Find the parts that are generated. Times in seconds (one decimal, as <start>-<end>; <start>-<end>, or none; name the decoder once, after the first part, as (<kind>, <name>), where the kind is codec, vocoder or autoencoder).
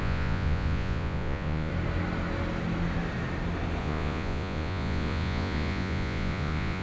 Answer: 0.0-1.7 (vocoder, Vocos); 3.8-6.8